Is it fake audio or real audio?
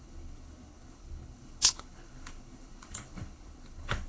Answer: fake